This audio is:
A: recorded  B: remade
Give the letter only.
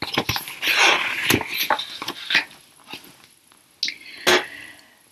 A